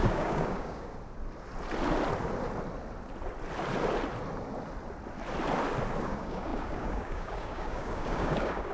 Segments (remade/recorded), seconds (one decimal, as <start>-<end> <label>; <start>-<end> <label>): 0.0-0.9 remade; 0.9-6.0 recorded; 6.0-8.7 remade